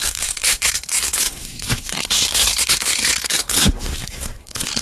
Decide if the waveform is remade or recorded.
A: remade